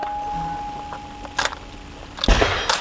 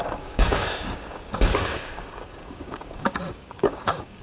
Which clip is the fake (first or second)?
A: second